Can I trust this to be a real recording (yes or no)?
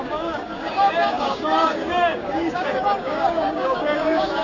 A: no